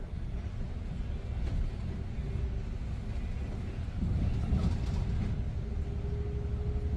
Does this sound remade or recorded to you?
recorded